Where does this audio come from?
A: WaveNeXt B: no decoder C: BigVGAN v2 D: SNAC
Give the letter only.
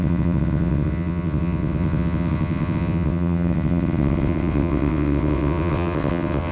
A